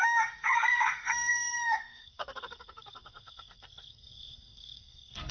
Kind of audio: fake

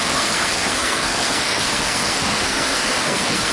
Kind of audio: fake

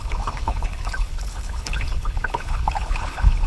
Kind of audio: fake